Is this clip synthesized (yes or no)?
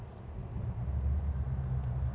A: no